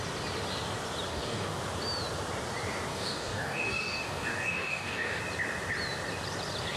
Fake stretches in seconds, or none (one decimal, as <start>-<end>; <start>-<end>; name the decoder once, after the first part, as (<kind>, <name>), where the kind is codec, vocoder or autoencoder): 1.1-1.6 (codec, DAC); 2.9-5.2